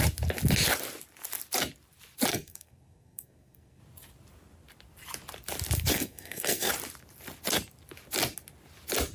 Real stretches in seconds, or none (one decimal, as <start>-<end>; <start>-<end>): 0.0-2.3; 3.8-5.9; 6.7-9.1